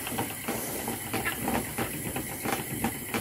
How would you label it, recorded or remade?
remade